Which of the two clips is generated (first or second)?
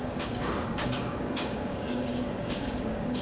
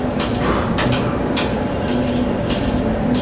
first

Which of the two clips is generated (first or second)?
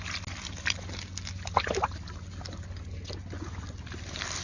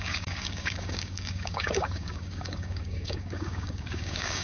second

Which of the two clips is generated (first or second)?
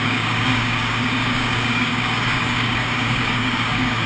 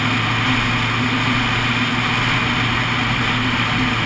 first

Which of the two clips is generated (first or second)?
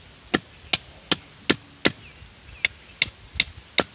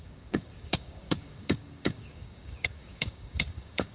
second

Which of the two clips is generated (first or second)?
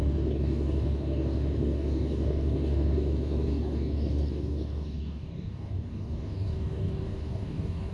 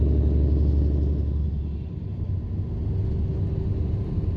first